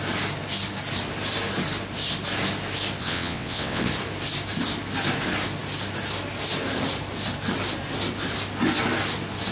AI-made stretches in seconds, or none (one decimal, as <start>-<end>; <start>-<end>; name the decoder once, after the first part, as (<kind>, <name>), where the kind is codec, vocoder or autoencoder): 3.0-3.9 (vocoder, WaveNeXt)